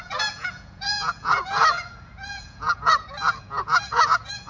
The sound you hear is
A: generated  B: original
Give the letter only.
A